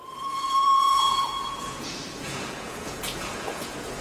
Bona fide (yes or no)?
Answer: no